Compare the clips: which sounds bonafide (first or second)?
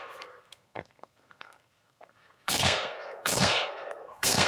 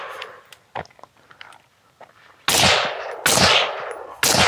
second